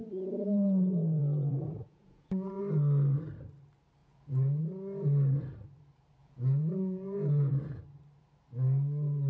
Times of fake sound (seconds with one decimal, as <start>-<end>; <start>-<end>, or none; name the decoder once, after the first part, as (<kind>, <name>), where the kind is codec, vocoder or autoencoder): 0.0-2.6 (vocoder, Vocos); 4.0-4.6; 6.2-7.8